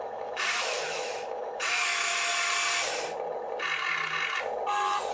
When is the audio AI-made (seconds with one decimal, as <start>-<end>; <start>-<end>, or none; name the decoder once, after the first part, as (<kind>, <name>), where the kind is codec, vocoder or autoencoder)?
0.0-2.3 (autoencoder, DAC-VAE)